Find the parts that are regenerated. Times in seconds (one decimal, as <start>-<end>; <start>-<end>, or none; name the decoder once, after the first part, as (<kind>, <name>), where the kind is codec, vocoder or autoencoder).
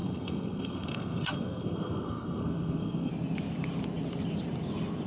0.0-3.1 (codec, SNAC)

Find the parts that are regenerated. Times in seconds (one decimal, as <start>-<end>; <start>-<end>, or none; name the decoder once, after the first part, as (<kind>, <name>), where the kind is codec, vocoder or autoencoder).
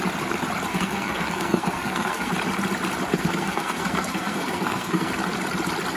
0.7-2.3 (codec, SNAC); 3.1-5.1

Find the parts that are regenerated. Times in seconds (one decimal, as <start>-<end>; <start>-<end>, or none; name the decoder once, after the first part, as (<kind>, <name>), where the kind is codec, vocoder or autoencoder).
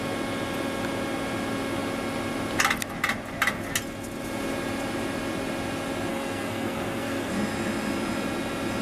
6.1-7.3 (codec, SNAC)